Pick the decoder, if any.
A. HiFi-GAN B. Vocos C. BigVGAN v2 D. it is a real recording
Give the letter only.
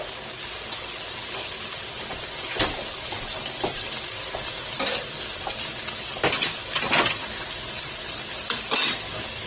D